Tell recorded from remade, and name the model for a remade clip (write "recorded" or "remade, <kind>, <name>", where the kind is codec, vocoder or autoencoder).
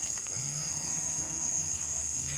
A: remade, codec, SNAC